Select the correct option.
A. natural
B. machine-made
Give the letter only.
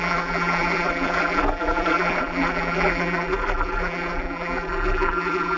B